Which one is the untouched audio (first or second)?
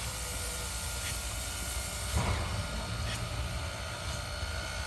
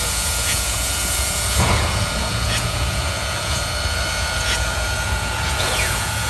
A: first